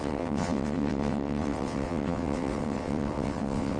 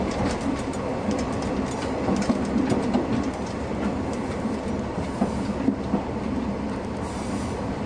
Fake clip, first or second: first